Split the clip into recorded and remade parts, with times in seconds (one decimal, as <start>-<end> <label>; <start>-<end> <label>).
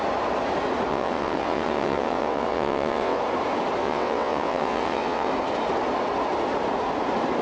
0.0-0.9 recorded; 0.9-3.2 remade; 3.2-3.8 recorded; 3.8-5.3 remade; 5.3-7.4 recorded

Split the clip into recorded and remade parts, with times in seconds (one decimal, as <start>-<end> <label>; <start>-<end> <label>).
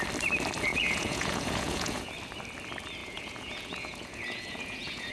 0.0-0.7 recorded; 0.7-2.1 remade; 2.1-3.0 recorded; 3.0-5.1 remade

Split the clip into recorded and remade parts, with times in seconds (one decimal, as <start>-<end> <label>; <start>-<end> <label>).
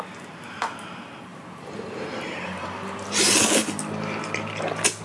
0.0-1.3 recorded; 1.3-3.3 remade; 3.3-5.0 recorded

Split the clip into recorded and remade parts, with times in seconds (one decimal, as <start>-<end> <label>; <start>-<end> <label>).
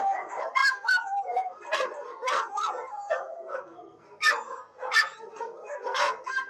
0.0-6.5 remade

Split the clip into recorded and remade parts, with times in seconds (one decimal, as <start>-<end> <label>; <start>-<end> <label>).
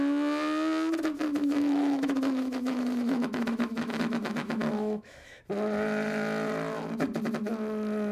0.0-1.3 recorded; 1.3-5.4 remade; 5.4-8.1 recorded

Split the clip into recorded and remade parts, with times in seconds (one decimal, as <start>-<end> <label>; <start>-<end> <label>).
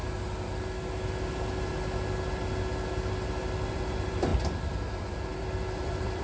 0.0-3.7 recorded; 3.7-6.2 remade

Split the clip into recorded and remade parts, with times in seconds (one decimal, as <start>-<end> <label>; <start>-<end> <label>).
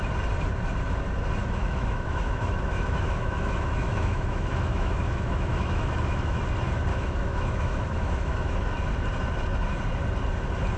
0.0-1.4 recorded; 1.4-6.4 remade; 6.4-6.9 recorded; 6.9-8.7 remade; 8.7-10.8 recorded